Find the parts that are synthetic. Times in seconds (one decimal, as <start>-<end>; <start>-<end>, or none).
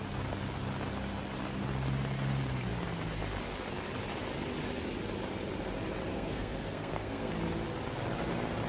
6.1-7.3